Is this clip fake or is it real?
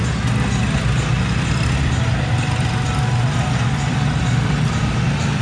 real